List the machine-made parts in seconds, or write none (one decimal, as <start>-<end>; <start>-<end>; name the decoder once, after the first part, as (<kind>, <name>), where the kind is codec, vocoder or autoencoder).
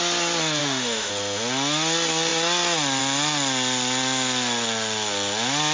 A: 0.6-1.1 (autoencoder, DAC-VAE)